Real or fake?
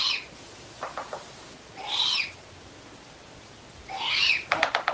real